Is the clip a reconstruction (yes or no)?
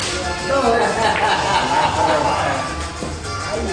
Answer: no